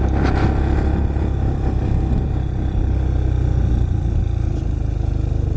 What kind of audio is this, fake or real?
real